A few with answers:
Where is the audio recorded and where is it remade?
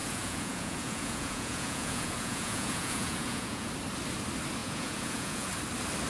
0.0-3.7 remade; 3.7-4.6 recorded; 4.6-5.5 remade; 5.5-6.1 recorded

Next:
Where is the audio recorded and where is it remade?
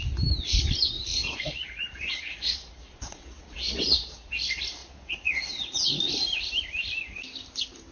0.0-1.2 recorded; 1.2-4.3 remade; 4.3-4.8 recorded; 4.8-6.1 remade; 6.1-7.9 recorded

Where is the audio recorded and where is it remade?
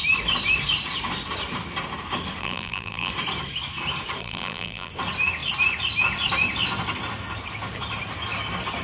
0.0-2.4 recorded; 2.4-3.1 remade; 3.1-4.2 recorded; 4.2-4.9 remade; 4.9-8.8 recorded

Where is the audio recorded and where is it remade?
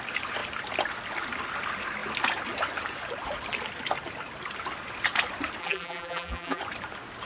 0.0-5.6 recorded; 5.6-6.6 remade; 6.6-7.3 recorded